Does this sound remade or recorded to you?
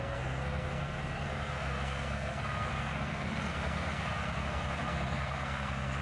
remade